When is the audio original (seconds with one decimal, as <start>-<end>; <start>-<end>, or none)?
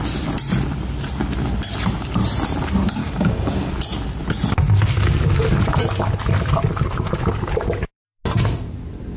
0.0-3.0; 3.7-9.2